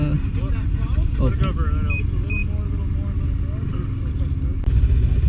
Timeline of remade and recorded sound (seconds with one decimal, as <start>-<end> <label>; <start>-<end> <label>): 0.0-5.3 recorded